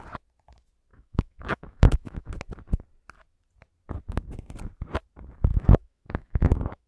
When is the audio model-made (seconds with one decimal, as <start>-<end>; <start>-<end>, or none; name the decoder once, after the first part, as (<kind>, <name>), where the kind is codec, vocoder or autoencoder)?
0.9-2.3 (autoencoder, DAC-VAE); 5.5-6.9